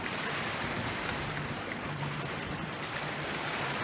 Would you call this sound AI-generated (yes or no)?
yes